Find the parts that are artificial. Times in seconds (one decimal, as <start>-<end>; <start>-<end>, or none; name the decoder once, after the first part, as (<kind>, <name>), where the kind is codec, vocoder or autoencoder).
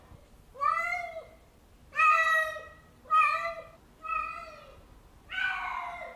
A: 0.5-1.4 (vocoder, BigVGAN v2)